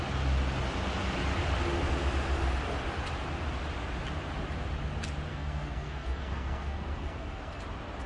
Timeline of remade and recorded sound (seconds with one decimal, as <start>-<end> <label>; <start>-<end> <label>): 0.0-5.3 recorded; 5.3-7.6 remade; 7.6-8.1 recorded